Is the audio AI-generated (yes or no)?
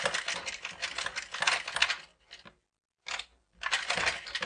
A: no